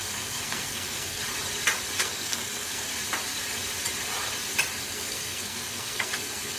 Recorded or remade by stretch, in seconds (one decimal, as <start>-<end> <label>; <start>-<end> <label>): 0.0-1.2 remade; 1.2-2.0 recorded; 2.0-2.9 remade; 2.9-4.8 recorded; 4.8-6.6 remade

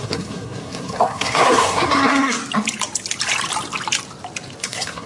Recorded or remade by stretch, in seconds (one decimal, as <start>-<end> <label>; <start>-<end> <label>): 0.0-2.4 remade; 2.4-4.6 recorded; 4.6-5.1 remade

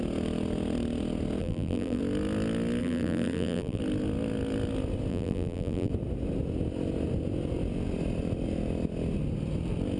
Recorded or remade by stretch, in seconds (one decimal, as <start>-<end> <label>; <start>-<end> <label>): 0.0-1.4 recorded; 1.4-2.0 remade; 2.0-2.8 recorded; 2.8-3.8 remade; 3.8-5.1 recorded; 5.1-5.9 remade; 5.9-10.0 recorded

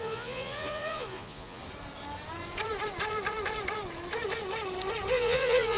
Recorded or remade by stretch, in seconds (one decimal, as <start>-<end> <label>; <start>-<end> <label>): 0.0-1.6 remade; 1.6-5.1 recorded; 5.1-5.8 remade